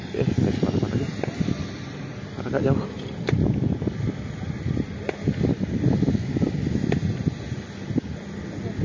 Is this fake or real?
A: real